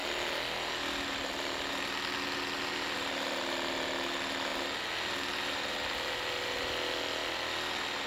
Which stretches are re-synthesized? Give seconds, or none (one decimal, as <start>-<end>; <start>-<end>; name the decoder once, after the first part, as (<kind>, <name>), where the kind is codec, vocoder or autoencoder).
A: none